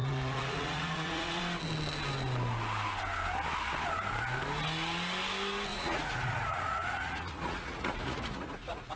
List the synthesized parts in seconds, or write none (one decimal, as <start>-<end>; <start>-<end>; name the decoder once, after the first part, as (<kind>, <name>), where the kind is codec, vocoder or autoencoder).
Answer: 0.0-1.4 (vocoder, Vocos); 5.7-9.0